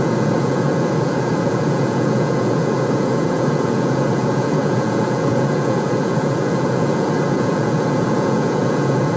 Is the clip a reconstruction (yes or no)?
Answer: yes